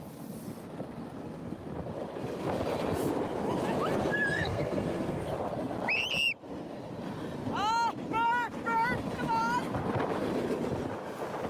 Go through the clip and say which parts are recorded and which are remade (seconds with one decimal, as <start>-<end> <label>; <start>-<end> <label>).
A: 0.0-4.3 recorded; 4.3-5.2 remade; 5.2-11.5 recorded